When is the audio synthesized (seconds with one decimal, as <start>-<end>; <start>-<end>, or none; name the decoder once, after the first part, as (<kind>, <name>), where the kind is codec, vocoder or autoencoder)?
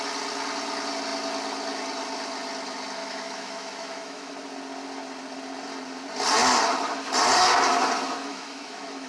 3.0-4.3 (autoencoder, DAC-VAE); 8.3-9.1